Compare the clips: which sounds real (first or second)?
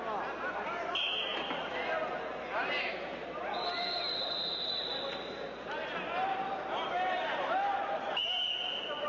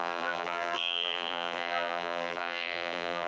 first